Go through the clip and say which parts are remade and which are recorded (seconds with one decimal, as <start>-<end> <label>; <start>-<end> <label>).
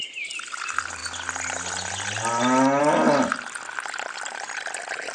0.0-5.1 recorded